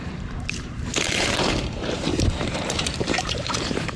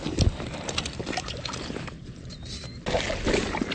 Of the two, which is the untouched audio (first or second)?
second